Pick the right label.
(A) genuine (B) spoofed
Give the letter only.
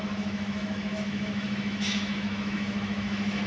B